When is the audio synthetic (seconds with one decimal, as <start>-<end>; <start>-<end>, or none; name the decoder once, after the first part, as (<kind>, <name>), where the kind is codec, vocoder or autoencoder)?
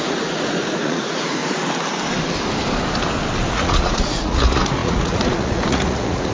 0.0-1.4 (vocoder, Vocos); 3.5-6.3